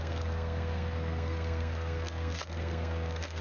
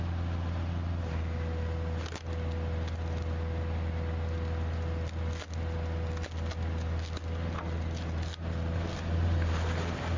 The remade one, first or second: first